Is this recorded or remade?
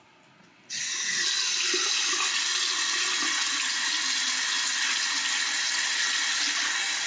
recorded